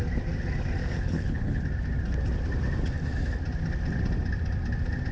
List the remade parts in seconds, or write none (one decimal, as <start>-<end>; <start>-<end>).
0.8-1.6